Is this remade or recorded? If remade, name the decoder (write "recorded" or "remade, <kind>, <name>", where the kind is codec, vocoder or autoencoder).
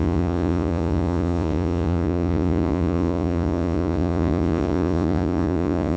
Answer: remade, vocoder, Vocos